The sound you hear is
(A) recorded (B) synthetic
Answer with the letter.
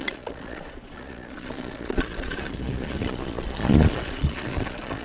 B